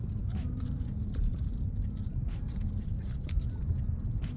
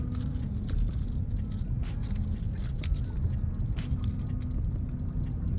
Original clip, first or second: second